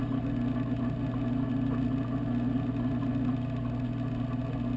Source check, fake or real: real